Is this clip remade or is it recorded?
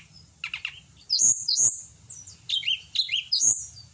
recorded